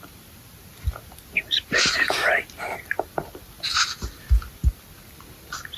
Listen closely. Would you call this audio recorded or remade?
recorded